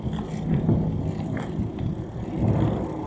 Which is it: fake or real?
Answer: real